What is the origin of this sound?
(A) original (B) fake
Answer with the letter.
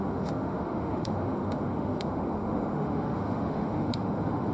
B